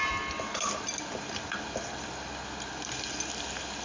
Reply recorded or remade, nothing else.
recorded